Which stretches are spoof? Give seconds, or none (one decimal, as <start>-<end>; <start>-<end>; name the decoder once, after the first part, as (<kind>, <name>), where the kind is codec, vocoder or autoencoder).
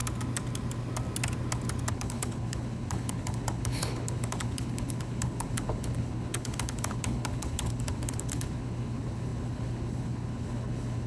1.9-11.1 (codec, HILCodec)